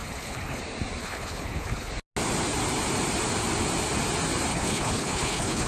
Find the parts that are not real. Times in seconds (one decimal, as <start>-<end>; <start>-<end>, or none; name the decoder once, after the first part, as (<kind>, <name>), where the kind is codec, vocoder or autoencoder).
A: 0.0-0.6 (codec, HILCodec); 1.0-1.9; 4.5-5.7